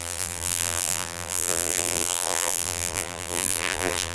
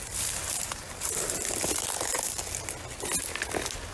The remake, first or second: first